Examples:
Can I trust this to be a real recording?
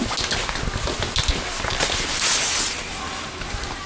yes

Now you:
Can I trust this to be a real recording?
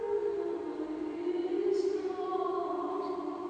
no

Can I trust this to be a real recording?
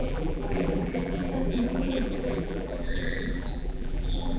no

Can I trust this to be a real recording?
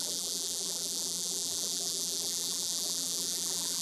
no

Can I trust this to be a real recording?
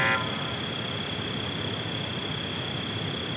yes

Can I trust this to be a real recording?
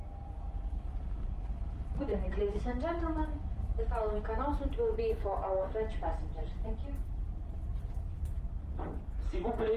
no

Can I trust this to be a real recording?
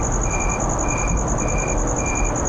yes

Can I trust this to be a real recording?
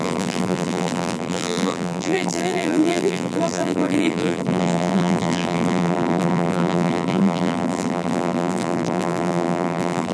no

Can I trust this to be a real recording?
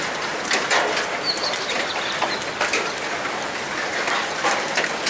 no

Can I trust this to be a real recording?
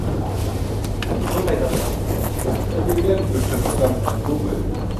no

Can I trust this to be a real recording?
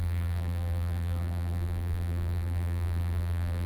no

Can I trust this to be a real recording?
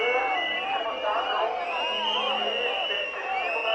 yes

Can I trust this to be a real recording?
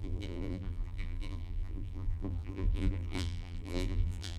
no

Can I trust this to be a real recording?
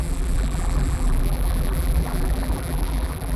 no